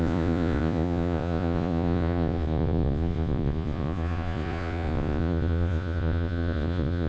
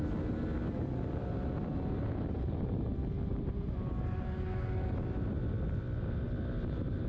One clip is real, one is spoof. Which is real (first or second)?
second